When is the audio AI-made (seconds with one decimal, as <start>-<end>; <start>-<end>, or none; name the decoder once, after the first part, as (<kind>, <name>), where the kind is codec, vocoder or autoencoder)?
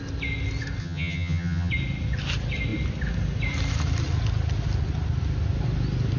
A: 0.8-1.7 (vocoder, HiFi-GAN)